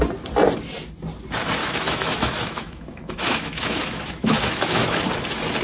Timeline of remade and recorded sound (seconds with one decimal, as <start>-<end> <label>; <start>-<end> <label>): 0.0-1.6 recorded; 1.6-5.0 remade; 5.0-5.6 recorded